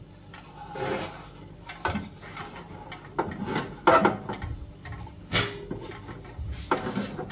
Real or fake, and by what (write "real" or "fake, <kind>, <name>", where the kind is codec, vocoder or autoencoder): real